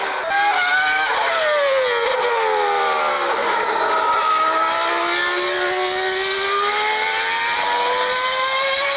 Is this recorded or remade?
recorded